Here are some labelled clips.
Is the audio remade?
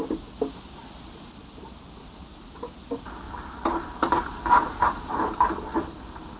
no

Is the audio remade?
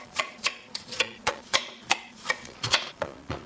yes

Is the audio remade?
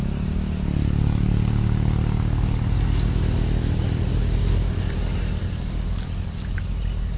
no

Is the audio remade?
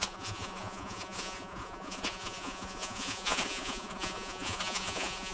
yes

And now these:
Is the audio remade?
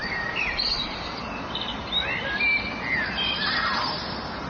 no